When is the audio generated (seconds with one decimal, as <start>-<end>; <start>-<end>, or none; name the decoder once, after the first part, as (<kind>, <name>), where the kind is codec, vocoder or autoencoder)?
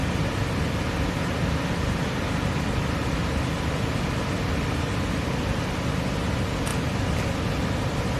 none